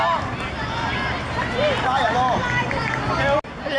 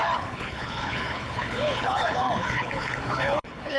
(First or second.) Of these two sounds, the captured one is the first